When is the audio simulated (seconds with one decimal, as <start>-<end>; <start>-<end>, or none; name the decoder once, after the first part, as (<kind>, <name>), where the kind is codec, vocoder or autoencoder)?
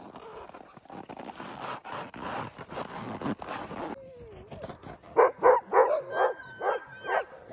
none